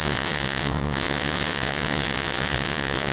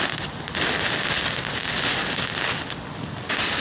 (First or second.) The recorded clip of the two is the second